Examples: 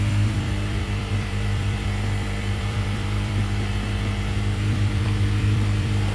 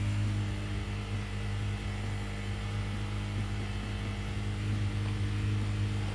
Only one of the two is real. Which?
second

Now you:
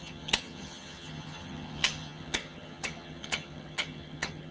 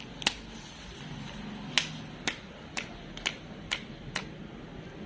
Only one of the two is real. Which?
second